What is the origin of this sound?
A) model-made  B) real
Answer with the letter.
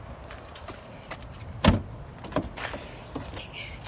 B